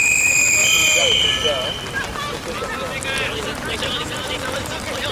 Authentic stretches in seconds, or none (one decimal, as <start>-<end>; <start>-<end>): 0.6-3.7